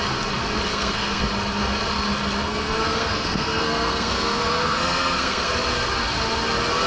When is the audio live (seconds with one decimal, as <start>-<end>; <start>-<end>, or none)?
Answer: 0.0-0.7; 1.2-2.4; 5.5-6.9